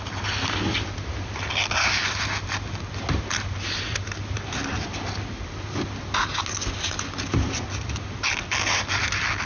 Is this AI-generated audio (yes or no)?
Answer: no